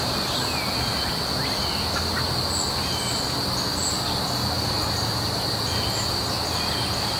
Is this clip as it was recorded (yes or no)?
yes